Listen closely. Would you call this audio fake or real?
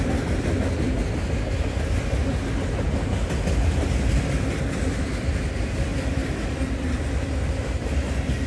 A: real